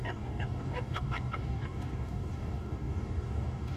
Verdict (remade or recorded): remade